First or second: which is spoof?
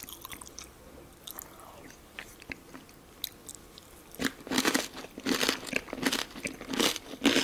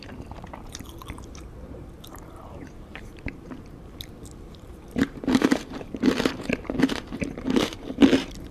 second